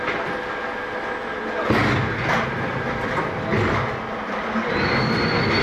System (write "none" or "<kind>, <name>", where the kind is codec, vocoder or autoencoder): none